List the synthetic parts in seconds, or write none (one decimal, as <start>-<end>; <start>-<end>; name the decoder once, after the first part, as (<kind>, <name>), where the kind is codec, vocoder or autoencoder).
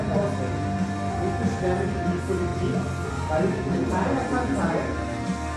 4.9-5.6 (codec, SNAC)